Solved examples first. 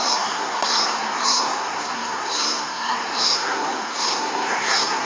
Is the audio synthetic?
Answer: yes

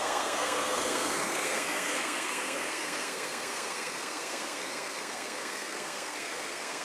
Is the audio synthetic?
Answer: yes